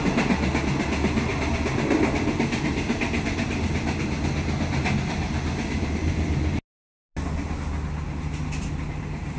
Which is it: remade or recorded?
recorded